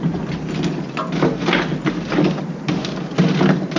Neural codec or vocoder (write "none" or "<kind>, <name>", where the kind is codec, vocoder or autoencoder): none